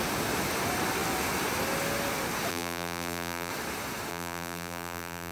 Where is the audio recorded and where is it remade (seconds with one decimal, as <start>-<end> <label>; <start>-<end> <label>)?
0.0-2.5 recorded; 2.5-3.5 remade; 3.5-4.1 recorded; 4.1-5.3 remade